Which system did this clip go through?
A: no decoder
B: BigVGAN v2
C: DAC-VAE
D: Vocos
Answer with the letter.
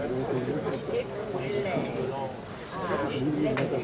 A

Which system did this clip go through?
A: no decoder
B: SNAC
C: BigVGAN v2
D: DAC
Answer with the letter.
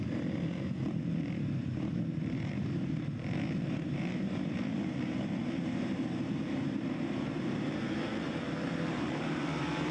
C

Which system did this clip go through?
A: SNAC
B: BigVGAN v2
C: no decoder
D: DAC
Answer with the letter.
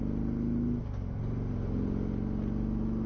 C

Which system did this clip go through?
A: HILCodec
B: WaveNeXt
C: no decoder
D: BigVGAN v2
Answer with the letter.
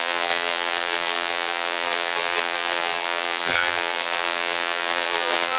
D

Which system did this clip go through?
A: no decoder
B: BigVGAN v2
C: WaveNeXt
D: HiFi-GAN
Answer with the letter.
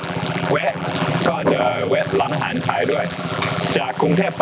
B